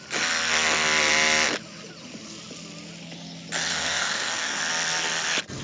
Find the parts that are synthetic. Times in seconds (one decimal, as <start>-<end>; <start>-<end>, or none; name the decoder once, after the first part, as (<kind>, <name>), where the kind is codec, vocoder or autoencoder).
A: 3.7-4.6 (codec, SNAC)